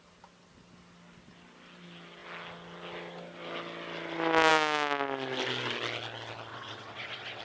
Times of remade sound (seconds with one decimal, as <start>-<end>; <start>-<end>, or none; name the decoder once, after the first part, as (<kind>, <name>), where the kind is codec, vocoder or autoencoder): 6.5-7.4 (vocoder, WaveNeXt)